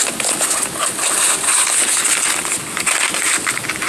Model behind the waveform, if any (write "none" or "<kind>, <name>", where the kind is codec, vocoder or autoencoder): none